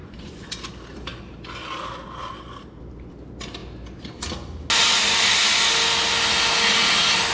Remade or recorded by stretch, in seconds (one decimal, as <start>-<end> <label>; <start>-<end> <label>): 0.0-0.7 remade; 0.7-7.3 recorded